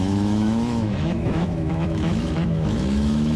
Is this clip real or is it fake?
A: fake